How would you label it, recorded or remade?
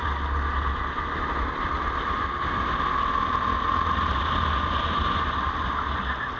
recorded